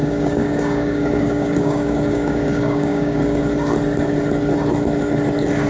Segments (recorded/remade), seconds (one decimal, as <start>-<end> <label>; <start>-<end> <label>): 0.0-3.4 remade; 3.4-5.7 recorded